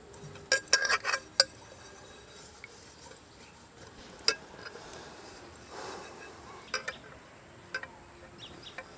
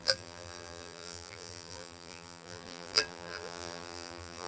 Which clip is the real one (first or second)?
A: first